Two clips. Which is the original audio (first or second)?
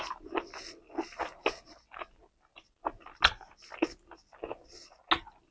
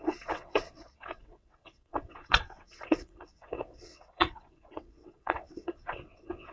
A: first